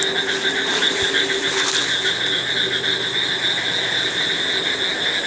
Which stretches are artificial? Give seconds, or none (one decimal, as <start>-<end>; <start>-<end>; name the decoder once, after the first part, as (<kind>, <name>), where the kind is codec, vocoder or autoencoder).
none